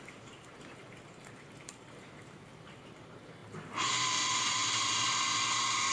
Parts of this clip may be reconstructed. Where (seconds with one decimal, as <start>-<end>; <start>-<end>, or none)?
0.0-3.4; 3.9-5.9